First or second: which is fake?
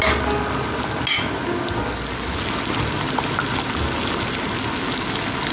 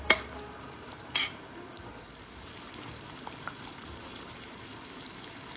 second